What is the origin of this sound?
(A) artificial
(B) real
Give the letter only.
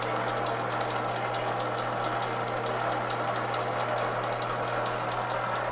B